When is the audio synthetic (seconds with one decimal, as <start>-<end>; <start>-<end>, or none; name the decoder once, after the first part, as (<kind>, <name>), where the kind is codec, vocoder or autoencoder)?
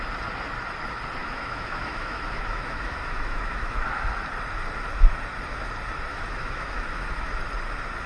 1.2-4.0 (autoencoder, DAC-VAE); 6.1-7.3